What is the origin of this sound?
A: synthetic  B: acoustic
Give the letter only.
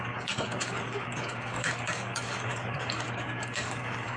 A